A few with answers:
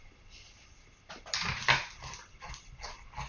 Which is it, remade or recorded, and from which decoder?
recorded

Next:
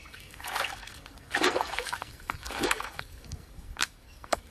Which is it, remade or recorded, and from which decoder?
remade, codec, SNAC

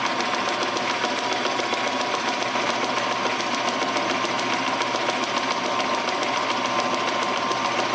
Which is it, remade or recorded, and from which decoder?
recorded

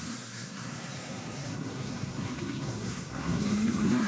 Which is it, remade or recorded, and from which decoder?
remade, codec, SNAC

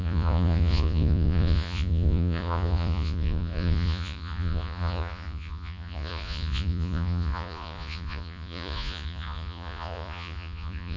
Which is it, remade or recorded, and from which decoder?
remade, vocoder, Vocos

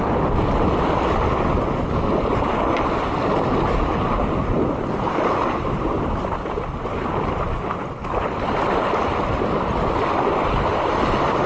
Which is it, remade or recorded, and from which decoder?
recorded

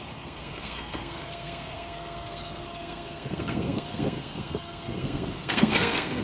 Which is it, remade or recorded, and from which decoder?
remade, codec, SNAC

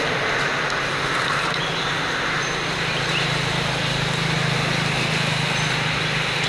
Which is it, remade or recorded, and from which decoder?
recorded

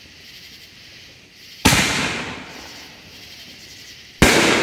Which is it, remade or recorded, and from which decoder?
recorded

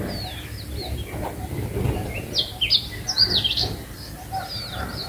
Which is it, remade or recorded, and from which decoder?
recorded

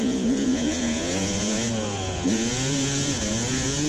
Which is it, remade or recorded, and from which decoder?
remade, vocoder, Vocos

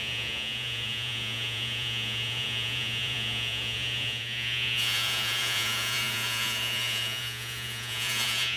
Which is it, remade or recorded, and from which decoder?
remade, vocoder, Vocos